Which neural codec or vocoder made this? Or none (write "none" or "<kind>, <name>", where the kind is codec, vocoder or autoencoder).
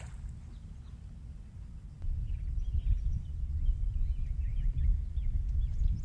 none